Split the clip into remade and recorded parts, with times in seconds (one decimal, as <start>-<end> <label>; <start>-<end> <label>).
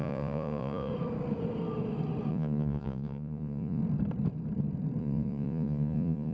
0.0-0.9 remade; 0.9-2.3 recorded; 2.3-3.8 remade; 3.8-5.0 recorded; 5.0-6.3 remade